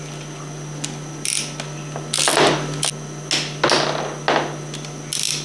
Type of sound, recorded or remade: recorded